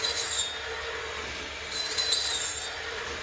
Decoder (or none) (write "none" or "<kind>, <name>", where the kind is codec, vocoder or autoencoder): none